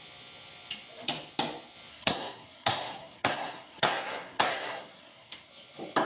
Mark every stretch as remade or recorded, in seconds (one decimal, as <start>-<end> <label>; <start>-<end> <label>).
0.0-1.9 recorded; 1.9-5.5 remade; 5.5-6.0 recorded